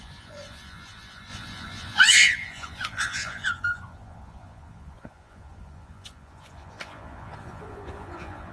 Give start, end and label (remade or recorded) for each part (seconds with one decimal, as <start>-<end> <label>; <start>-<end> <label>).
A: 0.0-8.5 remade